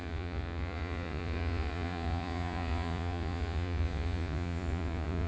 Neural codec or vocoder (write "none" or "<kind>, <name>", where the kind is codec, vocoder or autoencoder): vocoder, Vocos